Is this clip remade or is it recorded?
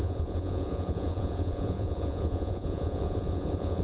remade